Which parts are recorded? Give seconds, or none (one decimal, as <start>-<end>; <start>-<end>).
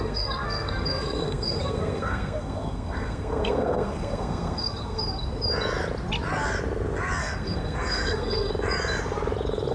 5.0-7.2; 8.5-9.7